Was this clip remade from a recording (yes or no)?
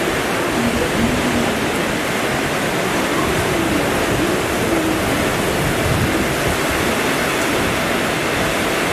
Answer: no